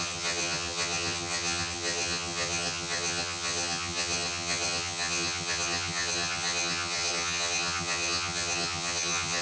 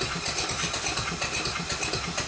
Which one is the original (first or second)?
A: second